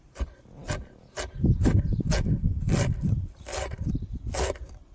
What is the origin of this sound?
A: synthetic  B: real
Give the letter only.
B